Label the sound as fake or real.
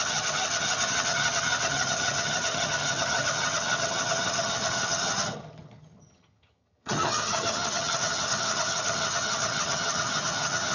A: fake